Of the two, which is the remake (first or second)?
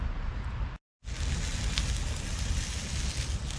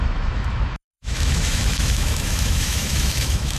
second